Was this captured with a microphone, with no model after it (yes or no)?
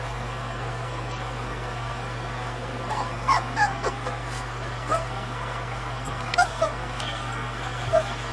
no